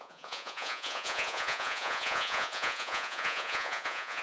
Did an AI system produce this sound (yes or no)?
yes